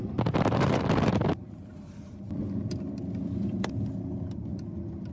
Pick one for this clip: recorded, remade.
recorded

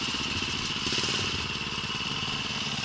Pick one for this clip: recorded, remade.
recorded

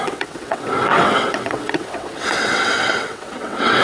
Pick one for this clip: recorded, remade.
remade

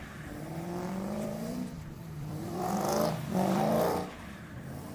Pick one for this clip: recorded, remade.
remade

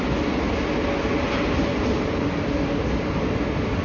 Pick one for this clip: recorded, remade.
recorded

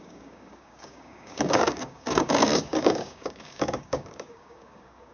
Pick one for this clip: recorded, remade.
remade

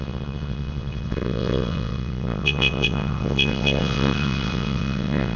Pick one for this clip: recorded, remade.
remade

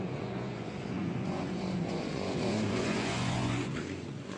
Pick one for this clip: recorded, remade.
remade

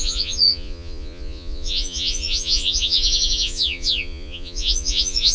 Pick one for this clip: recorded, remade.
remade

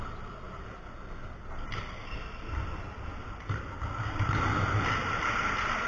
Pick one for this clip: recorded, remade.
recorded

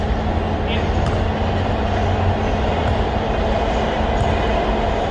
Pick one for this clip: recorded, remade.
recorded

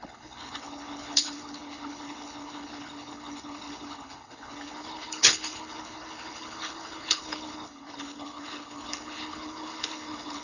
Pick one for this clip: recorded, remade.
remade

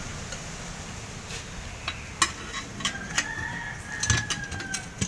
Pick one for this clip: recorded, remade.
recorded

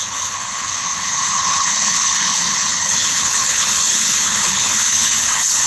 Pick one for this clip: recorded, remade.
remade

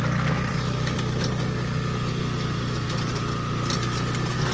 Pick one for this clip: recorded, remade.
recorded